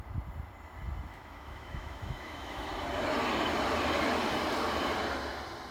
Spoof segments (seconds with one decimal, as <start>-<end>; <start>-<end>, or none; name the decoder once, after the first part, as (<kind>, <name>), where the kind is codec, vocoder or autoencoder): 1.1-2.7 (autoencoder, DAC-VAE)

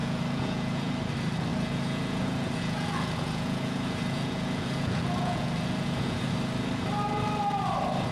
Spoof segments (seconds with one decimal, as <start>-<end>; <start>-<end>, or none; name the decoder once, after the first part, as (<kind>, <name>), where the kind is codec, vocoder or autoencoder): 0.0-0.9 (vocoder, Vocos); 1.5-6.3

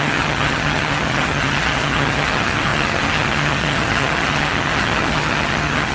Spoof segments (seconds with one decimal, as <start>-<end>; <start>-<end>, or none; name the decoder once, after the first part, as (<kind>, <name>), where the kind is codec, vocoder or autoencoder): 0.0-5.9 (vocoder, HiFi-GAN)

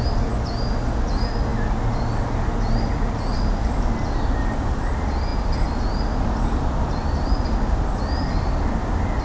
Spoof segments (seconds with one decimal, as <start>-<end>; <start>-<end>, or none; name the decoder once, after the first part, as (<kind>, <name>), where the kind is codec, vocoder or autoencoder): none

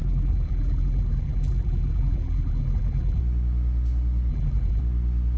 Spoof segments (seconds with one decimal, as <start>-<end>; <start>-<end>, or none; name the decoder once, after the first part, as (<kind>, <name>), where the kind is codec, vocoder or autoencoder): 0.0-3.2 (vocoder, BigVGAN v2); 4.3-4.8